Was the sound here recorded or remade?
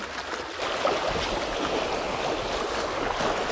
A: recorded